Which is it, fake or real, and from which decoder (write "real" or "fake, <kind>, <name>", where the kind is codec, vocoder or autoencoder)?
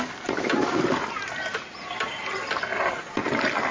real